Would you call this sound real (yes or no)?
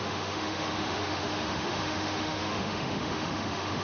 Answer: no